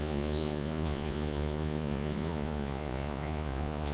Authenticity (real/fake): fake